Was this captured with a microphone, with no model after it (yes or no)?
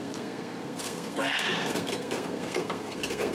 no